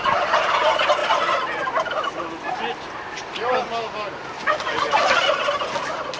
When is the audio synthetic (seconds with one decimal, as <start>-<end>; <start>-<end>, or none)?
none